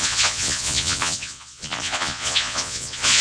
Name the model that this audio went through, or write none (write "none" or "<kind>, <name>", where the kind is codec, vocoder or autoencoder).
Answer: vocoder, Vocos